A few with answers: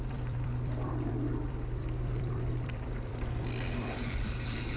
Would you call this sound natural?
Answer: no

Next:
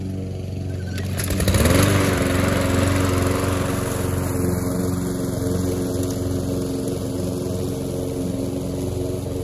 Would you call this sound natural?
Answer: yes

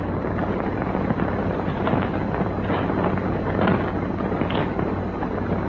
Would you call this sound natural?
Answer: yes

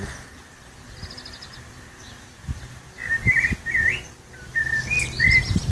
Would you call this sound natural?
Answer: yes